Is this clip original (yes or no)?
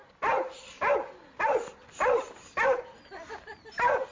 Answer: yes